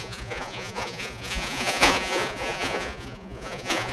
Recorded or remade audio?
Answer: remade